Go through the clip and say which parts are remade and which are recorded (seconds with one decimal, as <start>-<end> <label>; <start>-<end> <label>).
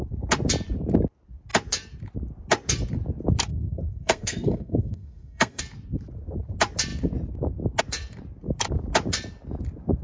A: 0.0-3.5 recorded; 3.5-5.6 remade; 5.6-10.0 recorded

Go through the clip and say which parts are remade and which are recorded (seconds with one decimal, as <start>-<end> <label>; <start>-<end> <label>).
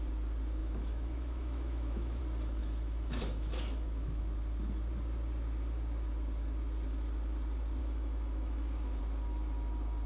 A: 0.0-0.6 recorded; 0.6-2.2 remade; 2.2-2.6 recorded; 2.6-4.2 remade; 4.2-7.8 recorded; 7.8-9.0 remade; 9.0-10.1 recorded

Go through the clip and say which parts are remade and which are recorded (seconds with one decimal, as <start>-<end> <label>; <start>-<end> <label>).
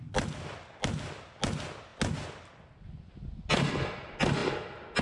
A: 0.0-5.0 recorded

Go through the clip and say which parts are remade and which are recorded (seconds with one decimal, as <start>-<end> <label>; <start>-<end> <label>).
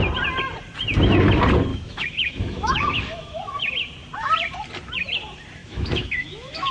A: 0.0-1.7 recorded; 1.7-3.7 remade; 3.7-5.6 recorded; 5.6-6.7 remade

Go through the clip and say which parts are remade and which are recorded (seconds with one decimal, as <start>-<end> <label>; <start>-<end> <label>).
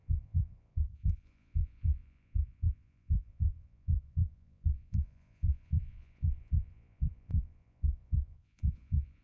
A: 0.0-9.2 remade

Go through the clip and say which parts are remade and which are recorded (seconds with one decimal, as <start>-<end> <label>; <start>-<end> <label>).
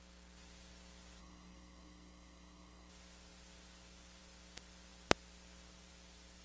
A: 0.0-1.2 recorded; 1.2-2.9 remade; 2.9-6.4 recorded